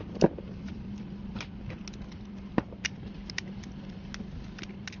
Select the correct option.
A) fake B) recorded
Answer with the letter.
B